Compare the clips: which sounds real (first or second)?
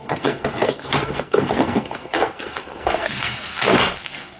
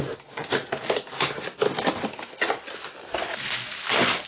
second